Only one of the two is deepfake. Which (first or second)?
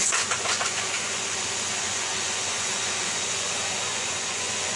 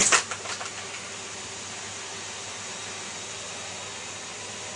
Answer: first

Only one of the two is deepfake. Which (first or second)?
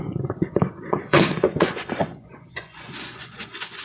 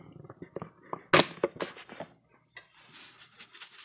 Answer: first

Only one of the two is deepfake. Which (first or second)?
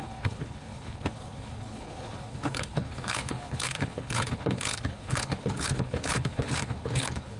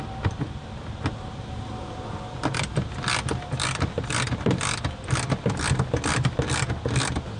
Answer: first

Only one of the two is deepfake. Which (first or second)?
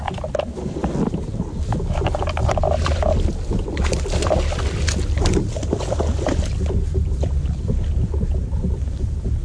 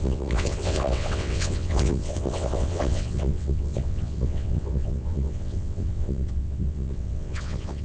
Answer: second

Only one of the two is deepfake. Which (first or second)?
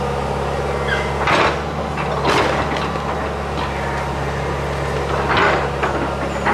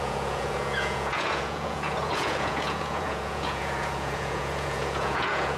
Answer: second